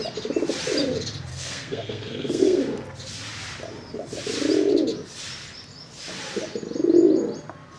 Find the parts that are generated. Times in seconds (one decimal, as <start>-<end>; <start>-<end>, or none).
1.3-2.6